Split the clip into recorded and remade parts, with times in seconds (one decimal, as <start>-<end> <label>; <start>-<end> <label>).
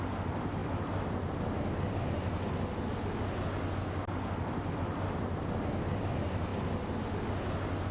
0.0-7.9 recorded